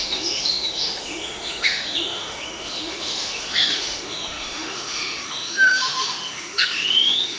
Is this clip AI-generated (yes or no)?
yes